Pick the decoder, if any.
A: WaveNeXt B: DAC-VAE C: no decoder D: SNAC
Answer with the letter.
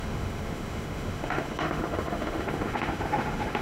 B